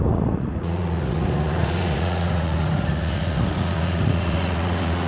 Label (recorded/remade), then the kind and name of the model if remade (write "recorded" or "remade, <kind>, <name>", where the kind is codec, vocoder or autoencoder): remade, vocoder, Vocos